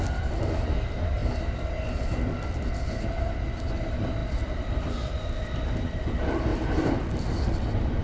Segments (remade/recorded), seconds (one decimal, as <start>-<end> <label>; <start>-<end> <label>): 0.0-6.5 recorded; 6.5-7.2 remade; 7.2-8.0 recorded